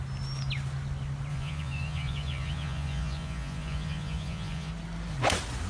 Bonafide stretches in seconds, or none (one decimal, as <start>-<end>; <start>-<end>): 0.0-1.3; 4.7-5.7